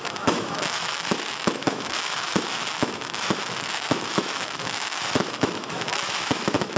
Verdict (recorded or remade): remade